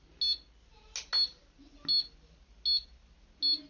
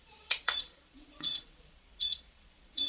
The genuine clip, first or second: first